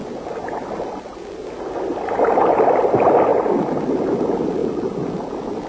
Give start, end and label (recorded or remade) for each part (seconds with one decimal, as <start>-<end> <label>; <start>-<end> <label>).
0.0-5.7 recorded